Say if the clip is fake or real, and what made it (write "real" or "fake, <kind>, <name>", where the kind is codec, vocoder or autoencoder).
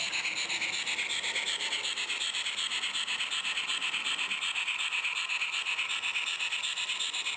real